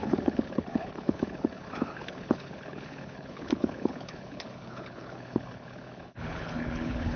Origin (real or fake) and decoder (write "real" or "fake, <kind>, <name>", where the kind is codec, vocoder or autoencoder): fake, codec, HILCodec